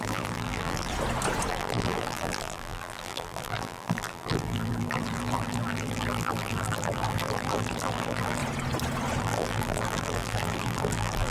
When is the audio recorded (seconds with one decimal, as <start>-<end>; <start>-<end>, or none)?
0.9-1.5; 8.4-9.2

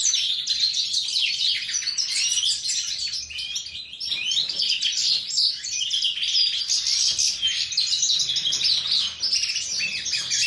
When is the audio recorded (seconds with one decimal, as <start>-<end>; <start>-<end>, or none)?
0.0-10.5

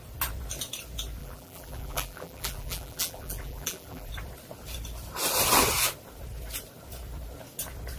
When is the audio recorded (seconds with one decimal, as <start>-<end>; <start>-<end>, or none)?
0.0-1.2; 4.1-8.0